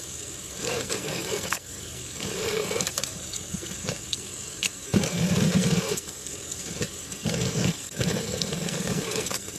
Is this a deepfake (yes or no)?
yes